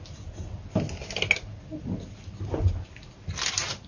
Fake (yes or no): no